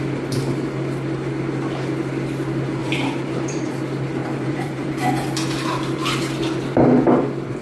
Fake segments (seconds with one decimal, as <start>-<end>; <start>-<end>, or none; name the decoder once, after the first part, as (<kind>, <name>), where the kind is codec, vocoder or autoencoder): 2.8-3.8 (vocoder, BigVGAN v2); 4.2-4.9